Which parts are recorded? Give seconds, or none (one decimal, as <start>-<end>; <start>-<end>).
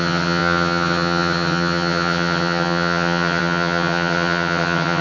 none